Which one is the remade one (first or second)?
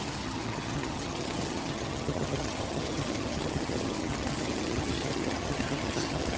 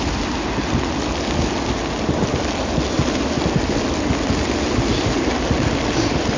first